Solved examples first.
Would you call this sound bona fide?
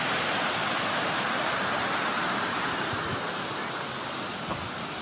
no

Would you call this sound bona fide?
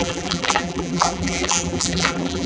no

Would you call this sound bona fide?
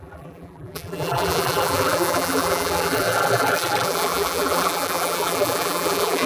no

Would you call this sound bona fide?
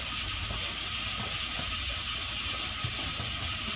yes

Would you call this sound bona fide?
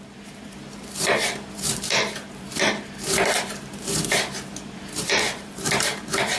no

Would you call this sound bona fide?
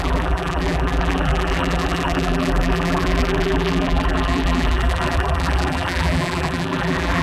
no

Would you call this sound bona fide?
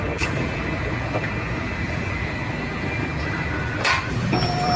no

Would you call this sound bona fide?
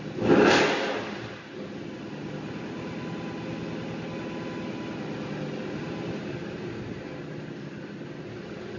yes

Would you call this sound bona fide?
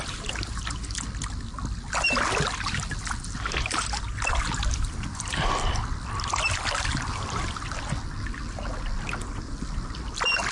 yes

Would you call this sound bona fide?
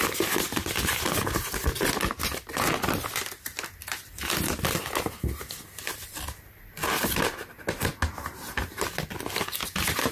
yes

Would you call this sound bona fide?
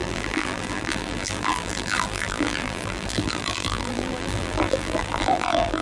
no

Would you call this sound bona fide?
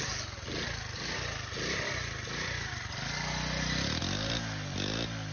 yes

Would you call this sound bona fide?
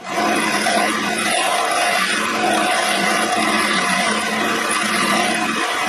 yes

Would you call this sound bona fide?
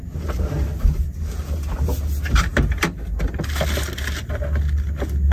yes